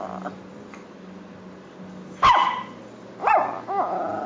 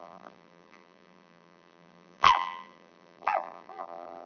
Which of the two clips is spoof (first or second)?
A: second